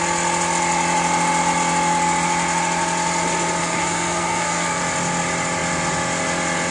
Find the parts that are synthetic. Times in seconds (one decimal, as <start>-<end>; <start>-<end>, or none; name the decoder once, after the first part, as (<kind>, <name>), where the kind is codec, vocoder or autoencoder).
3.6-4.8 (codec, SNAC)